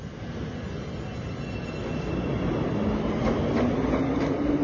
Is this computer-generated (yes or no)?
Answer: no